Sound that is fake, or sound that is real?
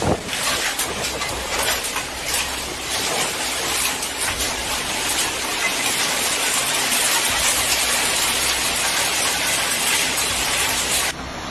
real